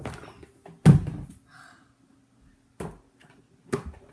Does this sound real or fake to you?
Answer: real